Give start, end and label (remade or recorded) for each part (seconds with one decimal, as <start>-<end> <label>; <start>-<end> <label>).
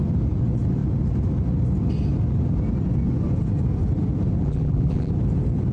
0.0-4.4 recorded; 4.4-5.1 remade; 5.1-5.7 recorded